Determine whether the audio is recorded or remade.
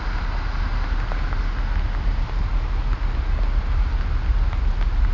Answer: recorded